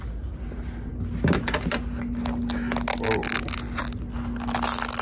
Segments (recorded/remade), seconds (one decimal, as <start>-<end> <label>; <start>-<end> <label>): 0.0-5.0 recorded